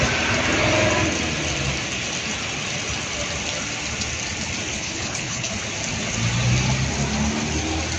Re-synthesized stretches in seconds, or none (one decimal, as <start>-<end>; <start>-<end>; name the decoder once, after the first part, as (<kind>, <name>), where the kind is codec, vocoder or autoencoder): 4.7-5.5 (codec, HILCodec)